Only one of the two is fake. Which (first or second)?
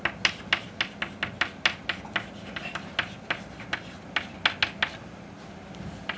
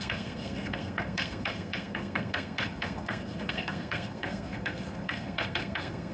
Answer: second